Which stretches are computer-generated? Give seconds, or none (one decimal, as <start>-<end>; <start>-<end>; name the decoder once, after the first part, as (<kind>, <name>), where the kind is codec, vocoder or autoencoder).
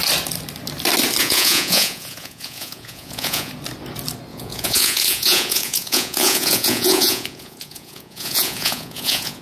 1.2-3.5 (vocoder, Vocos); 4.3-9.4